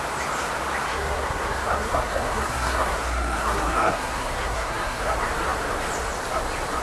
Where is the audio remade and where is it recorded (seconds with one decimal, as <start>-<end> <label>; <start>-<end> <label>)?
0.0-0.9 recorded; 0.9-5.0 remade; 5.0-6.8 recorded